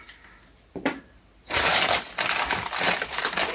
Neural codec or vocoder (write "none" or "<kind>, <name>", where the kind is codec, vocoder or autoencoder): none